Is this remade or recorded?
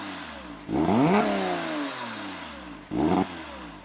recorded